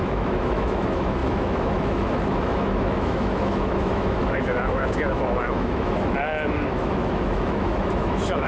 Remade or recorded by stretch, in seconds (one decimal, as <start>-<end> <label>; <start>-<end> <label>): 0.0-8.5 remade